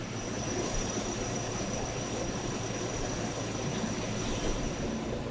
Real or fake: real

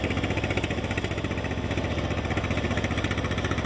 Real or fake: real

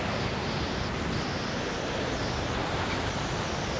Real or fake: real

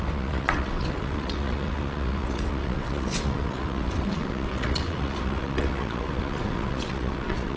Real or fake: fake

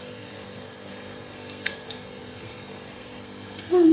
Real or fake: fake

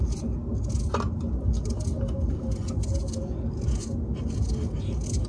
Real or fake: real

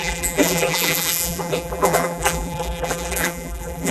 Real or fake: fake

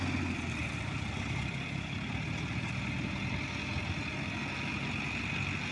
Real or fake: real